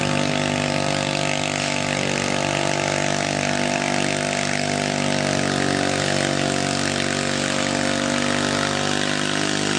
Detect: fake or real real